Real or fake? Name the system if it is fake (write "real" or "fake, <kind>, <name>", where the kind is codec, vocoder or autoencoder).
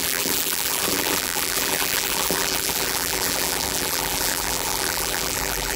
fake, vocoder, BigVGAN v2